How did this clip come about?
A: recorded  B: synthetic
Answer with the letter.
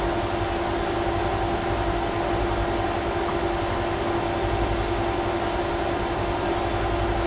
A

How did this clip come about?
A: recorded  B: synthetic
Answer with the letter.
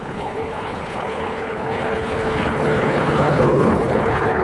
B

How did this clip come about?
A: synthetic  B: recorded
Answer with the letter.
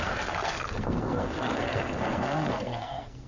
A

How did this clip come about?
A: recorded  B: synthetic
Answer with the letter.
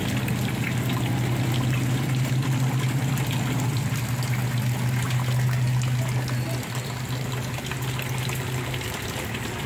A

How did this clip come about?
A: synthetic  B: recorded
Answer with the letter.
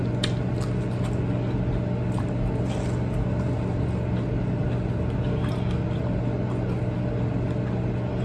B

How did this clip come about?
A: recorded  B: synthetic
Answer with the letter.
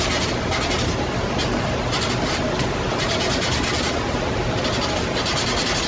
A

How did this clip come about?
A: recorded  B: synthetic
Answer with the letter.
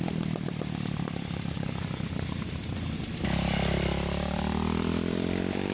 B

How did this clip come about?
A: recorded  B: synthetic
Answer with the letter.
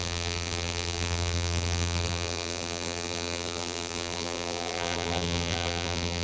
B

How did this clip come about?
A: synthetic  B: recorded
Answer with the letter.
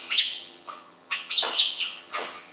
A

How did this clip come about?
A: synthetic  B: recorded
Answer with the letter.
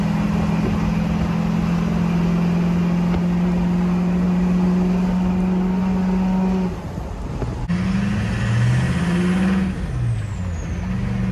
B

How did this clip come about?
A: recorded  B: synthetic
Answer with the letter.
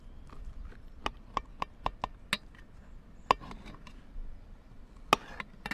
A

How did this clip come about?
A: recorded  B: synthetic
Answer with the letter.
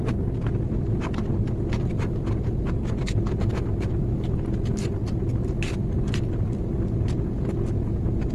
A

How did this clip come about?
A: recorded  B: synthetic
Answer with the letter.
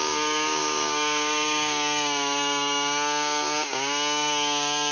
B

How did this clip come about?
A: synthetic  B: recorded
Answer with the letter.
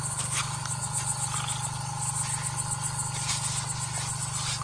B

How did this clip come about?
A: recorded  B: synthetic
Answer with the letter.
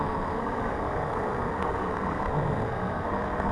B